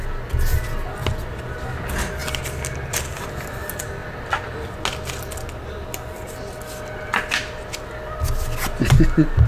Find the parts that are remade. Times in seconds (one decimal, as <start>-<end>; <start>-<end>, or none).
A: none